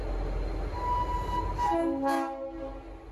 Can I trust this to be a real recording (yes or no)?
yes